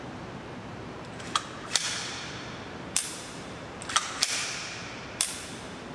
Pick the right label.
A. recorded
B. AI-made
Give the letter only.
B